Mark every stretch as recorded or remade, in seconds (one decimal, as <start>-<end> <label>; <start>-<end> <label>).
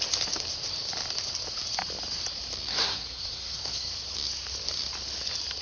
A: 0.0-2.7 recorded; 2.7-3.9 remade; 3.9-5.6 recorded